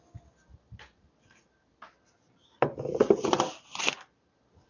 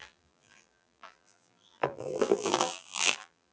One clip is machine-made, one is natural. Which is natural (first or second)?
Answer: first